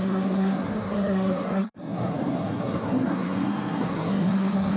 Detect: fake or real fake